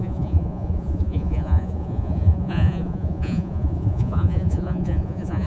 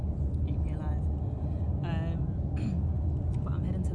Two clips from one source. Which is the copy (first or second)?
first